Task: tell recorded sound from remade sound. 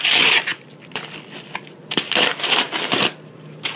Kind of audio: recorded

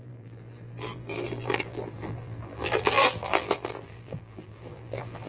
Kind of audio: remade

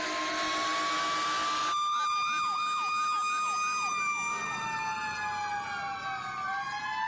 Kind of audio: recorded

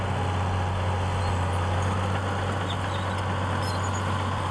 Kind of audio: recorded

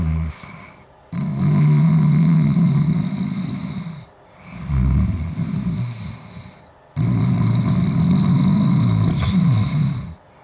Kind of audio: recorded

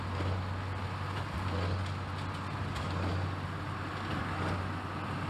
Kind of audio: recorded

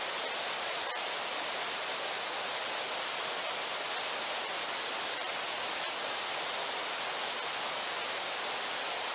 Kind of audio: recorded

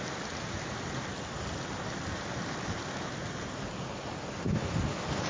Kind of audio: recorded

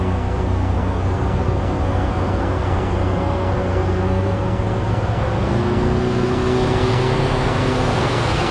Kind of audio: remade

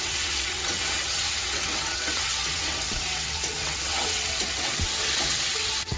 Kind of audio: remade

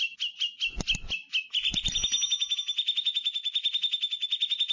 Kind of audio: recorded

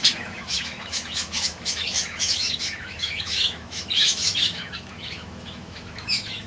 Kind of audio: remade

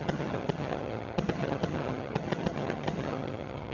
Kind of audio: remade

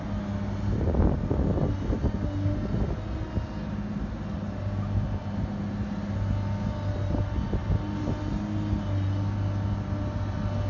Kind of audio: recorded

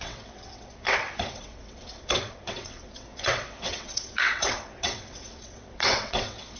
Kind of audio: remade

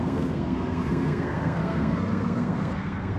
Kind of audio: remade